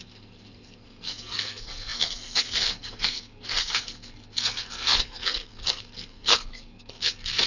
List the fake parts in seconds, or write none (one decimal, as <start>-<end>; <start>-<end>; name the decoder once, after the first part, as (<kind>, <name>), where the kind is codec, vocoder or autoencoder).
0.0-7.5 (codec, SNAC)